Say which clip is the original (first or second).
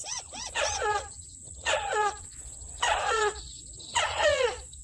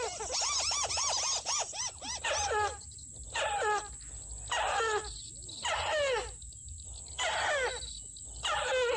second